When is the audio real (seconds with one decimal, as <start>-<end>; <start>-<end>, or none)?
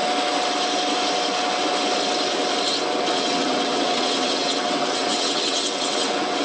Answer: 0.0-3.0